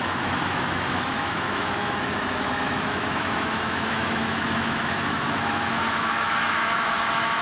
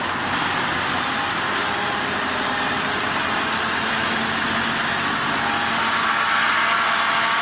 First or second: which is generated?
first